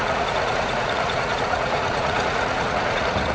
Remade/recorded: remade